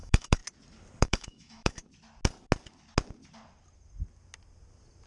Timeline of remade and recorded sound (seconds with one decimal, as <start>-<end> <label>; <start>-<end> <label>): 0.0-0.4 remade; 0.4-1.0 recorded; 1.0-1.8 remade; 1.8-5.1 recorded